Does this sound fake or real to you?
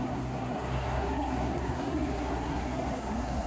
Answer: fake